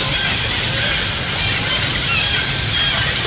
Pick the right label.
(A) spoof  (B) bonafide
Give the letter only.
B